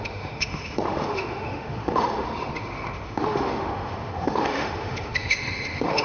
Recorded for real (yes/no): no